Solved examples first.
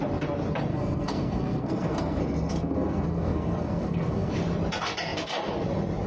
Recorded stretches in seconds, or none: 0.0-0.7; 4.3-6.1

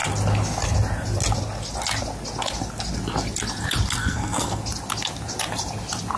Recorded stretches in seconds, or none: 0.0-4.0; 4.6-6.2

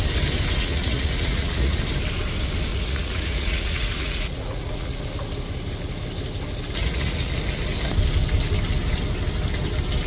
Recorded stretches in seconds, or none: 0.0-0.6; 1.8-2.7; 5.0-6.8; 7.4-10.1